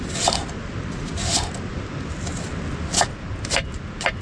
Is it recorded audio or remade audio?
recorded